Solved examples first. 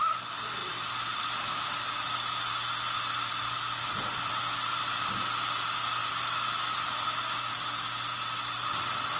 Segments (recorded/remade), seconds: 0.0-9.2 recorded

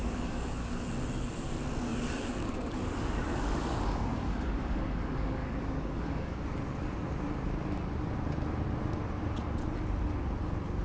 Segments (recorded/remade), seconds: 0.0-0.9 remade; 0.9-1.9 recorded; 1.9-6.4 remade; 6.4-10.8 recorded

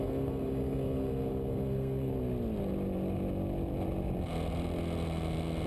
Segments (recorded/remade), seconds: 0.0-2.1 remade; 2.1-5.7 recorded

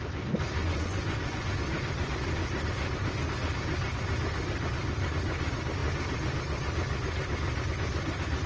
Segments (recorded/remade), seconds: 0.0-0.6 recorded; 0.6-1.5 remade; 1.5-8.5 recorded

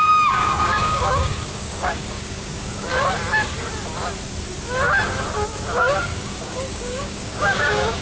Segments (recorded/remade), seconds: 0.0-2.9 remade; 2.9-5.8 recorded; 5.8-8.0 remade

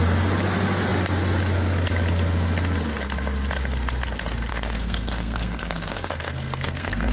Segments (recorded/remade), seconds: 0.0-4.5 recorded; 4.5-7.1 remade

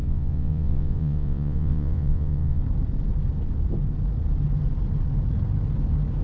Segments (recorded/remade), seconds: 0.0-2.6 remade; 2.6-6.2 recorded